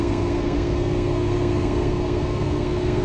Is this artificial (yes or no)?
yes